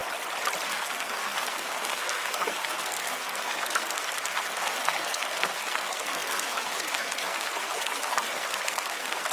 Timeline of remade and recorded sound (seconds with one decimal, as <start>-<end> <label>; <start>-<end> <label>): 0.0-0.7 recorded; 0.7-9.3 remade